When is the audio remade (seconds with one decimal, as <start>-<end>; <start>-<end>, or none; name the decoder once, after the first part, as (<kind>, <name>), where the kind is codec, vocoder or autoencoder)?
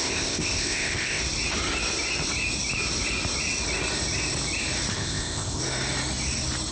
0.0-1.2 (codec, ZipCodec); 4.9-5.6